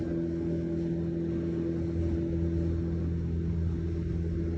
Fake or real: real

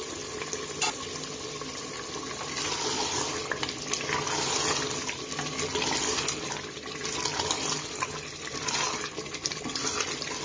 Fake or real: real